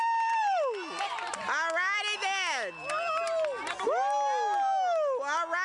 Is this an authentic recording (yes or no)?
yes